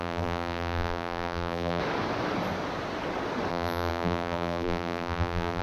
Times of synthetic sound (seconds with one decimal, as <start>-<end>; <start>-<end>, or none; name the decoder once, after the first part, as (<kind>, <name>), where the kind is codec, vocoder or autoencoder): 0.0-1.8 (vocoder, BigVGAN v2); 3.5-5.6